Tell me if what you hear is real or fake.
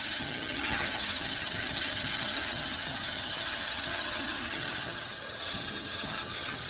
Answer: fake